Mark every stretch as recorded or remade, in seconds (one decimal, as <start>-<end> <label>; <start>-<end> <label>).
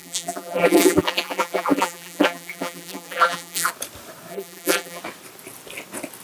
0.0-3.7 remade; 3.7-4.3 recorded; 4.3-5.0 remade; 5.0-6.2 recorded